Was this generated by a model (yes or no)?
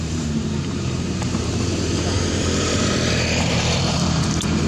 yes